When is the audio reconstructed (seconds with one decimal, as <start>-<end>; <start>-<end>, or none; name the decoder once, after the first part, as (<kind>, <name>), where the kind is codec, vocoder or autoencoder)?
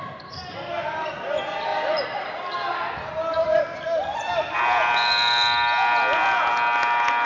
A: none